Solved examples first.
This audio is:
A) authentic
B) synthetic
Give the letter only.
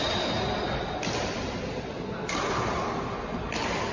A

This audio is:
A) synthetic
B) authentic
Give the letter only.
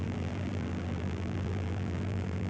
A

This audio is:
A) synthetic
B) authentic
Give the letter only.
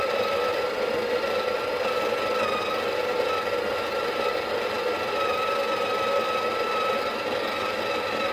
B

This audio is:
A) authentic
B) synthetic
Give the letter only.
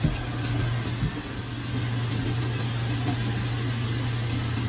A